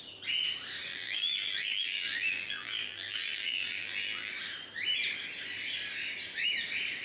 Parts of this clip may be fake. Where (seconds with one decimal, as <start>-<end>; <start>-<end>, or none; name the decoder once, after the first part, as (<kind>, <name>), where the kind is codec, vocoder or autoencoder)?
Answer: 0.9-4.3 (vocoder, BigVGAN v2)